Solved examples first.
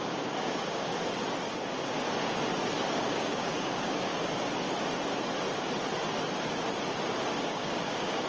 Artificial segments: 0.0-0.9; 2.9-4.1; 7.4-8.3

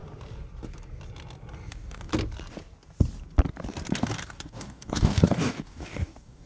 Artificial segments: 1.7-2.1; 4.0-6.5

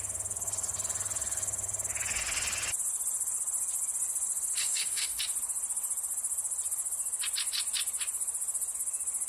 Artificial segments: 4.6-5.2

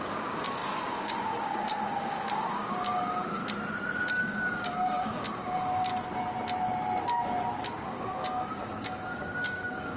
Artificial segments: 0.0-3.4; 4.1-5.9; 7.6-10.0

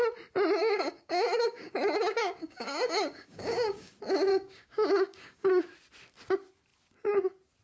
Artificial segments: 0.6-3.9; 4.3-5.5